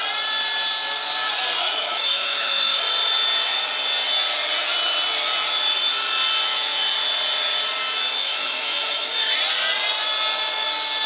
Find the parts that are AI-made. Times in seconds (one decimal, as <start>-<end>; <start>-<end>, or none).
1.6-2.8; 8.2-9.1